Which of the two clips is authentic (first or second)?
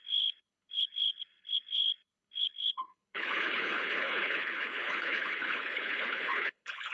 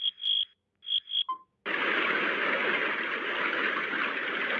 second